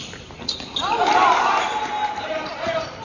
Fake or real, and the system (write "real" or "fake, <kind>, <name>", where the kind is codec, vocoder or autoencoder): fake, vocoder, BigVGAN v2